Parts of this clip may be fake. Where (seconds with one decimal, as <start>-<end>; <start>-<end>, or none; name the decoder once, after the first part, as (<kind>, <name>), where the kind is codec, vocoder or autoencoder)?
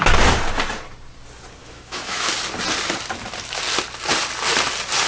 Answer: 1.6-2.3 (autoencoder, DAC-VAE)